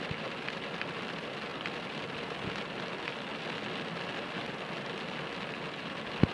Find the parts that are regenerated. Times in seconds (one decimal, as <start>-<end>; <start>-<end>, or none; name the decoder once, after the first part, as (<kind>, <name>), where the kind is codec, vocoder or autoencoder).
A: none